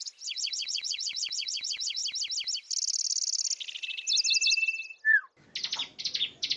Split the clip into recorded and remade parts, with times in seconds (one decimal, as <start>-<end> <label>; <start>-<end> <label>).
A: 0.0-2.0 remade; 2.0-6.0 recorded; 6.0-6.6 remade